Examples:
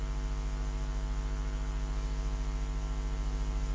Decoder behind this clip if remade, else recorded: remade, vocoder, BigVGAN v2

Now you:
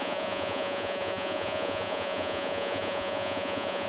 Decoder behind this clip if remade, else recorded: remade, vocoder, Vocos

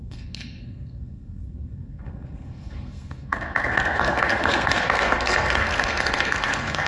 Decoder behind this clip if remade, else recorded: remade, codec, SNAC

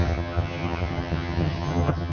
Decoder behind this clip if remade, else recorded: remade, vocoder, HiFi-GAN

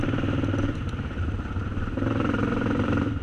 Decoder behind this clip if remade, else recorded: remade, vocoder, BigVGAN v2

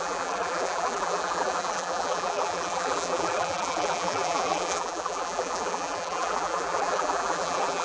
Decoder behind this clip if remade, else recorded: remade, vocoder, BigVGAN v2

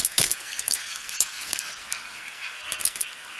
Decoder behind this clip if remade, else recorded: remade, codec, SNAC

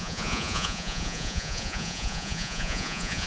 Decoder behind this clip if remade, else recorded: remade, vocoder, Vocos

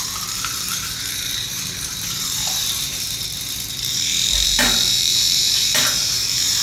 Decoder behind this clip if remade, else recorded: remade, vocoder, BigVGAN v2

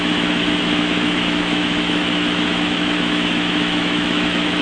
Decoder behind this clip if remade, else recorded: remade, autoencoder, DAC-VAE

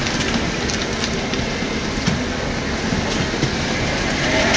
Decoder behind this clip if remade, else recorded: recorded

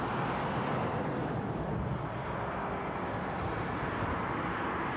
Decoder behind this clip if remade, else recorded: recorded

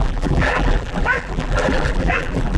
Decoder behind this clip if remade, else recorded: remade, vocoder, BigVGAN v2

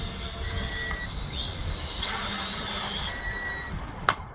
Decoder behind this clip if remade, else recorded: recorded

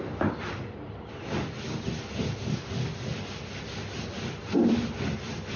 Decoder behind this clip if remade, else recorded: recorded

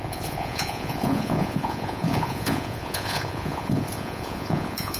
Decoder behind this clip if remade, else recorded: remade, vocoder, Vocos